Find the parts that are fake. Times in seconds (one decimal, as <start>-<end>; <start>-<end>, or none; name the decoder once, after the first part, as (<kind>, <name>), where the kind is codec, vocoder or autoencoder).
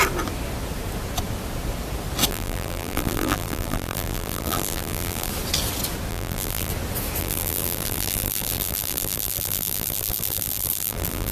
2.3-5.3 (vocoder, BigVGAN v2); 6.1-6.7; 7.2-11.3